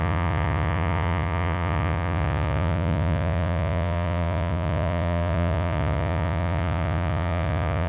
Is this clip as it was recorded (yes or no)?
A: no